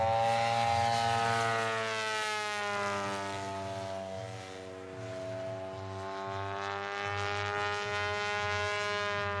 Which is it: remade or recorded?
recorded